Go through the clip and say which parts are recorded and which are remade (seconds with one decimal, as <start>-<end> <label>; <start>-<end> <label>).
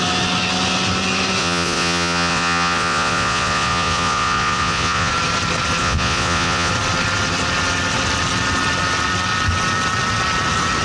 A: 0.0-1.4 recorded; 1.4-5.1 remade; 5.1-5.8 recorded; 5.8-6.7 remade; 6.7-10.8 recorded